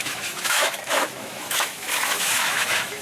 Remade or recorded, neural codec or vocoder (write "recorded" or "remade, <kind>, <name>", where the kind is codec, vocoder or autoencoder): remade, autoencoder, DAC-VAE